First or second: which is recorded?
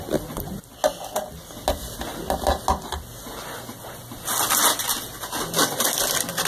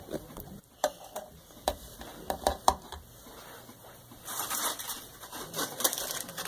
first